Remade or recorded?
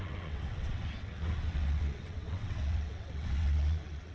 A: remade